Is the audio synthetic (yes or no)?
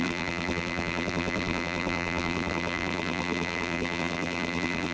yes